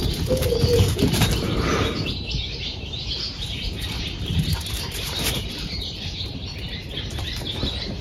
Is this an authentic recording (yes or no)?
no